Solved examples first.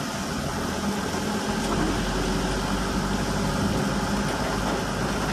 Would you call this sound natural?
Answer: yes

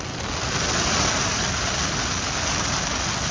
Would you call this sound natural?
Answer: yes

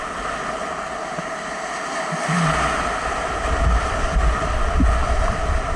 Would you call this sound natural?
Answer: yes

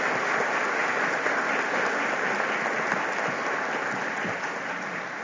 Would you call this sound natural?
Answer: yes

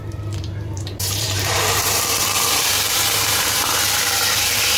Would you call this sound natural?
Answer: no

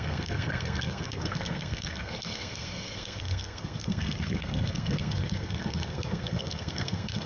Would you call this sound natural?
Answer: no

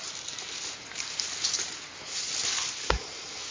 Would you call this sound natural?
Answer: yes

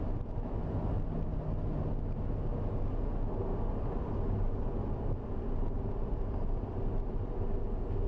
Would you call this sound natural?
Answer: yes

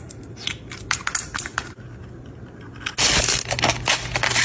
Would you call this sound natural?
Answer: yes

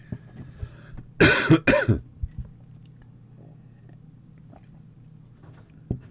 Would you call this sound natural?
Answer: yes